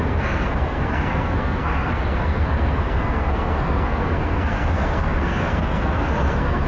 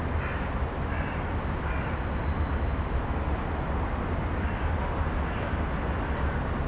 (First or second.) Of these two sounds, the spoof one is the first